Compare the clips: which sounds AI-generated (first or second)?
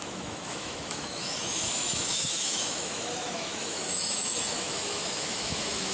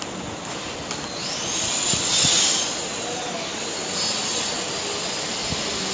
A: first